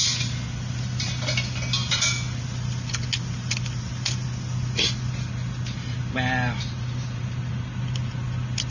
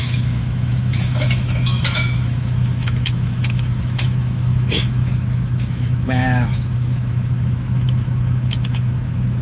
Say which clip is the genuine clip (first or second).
first